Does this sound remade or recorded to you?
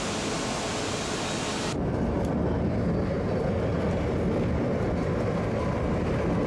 recorded